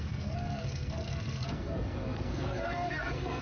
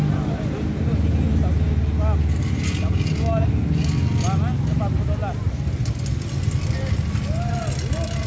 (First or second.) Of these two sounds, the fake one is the first